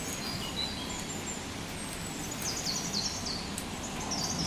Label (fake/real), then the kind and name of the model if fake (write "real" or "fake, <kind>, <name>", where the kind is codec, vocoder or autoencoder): real